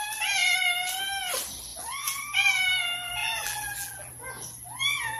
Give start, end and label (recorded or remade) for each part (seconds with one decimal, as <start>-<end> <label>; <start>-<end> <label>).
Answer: 0.0-3.2 recorded; 3.2-4.1 remade; 4.1-5.2 recorded